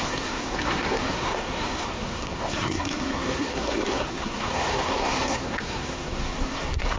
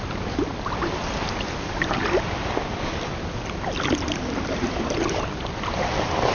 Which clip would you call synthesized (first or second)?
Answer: first